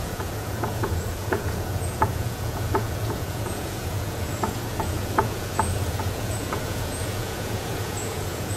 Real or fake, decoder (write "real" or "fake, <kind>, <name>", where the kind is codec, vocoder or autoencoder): fake, vocoder, Vocos